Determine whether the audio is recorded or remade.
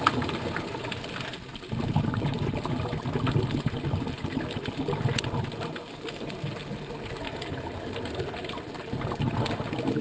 recorded